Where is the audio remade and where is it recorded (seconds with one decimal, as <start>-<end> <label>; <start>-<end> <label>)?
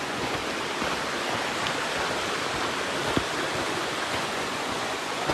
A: 0.0-0.4 remade; 0.4-3.6 recorded; 3.6-5.3 remade